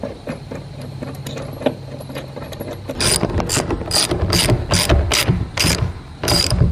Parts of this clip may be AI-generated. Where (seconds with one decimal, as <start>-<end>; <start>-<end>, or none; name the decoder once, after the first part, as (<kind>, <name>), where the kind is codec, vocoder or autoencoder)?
0.0-1.2 (vocoder, BigVGAN v2); 5.2-6.7